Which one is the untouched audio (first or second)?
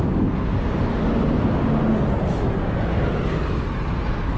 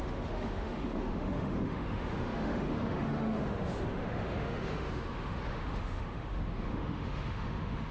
first